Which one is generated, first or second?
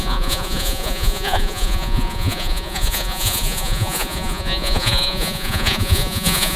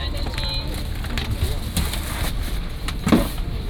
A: first